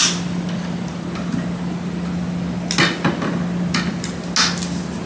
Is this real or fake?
real